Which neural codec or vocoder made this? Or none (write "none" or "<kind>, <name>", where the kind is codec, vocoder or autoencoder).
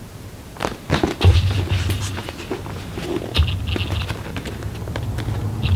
none